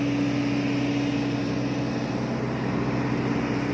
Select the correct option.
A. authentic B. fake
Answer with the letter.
A